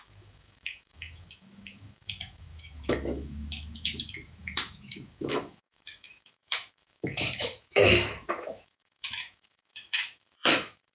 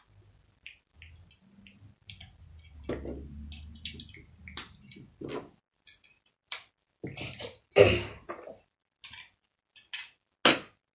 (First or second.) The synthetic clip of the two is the first